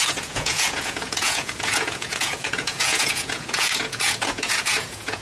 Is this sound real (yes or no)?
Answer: no